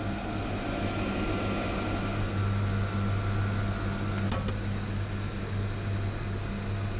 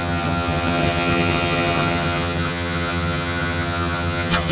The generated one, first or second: second